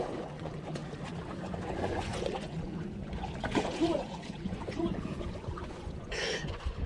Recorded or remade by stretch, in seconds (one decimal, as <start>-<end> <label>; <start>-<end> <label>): 0.0-0.8 remade; 0.8-1.4 recorded; 1.4-6.9 remade

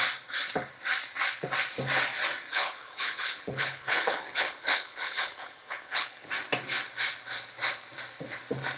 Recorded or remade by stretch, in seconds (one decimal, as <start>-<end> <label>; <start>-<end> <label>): 0.0-2.5 recorded; 2.5-6.3 remade; 6.3-8.8 recorded

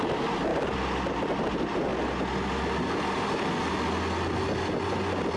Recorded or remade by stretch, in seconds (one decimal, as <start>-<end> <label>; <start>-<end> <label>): 0.0-0.5 remade; 0.5-1.5 recorded; 1.5-1.9 remade; 1.9-5.4 recorded